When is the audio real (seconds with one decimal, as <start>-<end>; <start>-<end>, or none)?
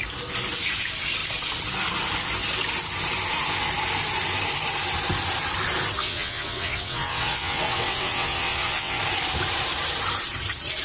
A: 0.0-6.0; 9.0-10.8